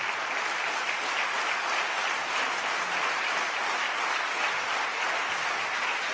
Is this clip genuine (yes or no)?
yes